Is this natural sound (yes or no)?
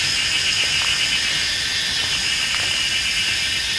yes